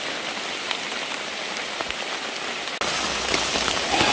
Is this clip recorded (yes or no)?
yes